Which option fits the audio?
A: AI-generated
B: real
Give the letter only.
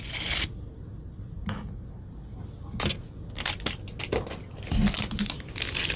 B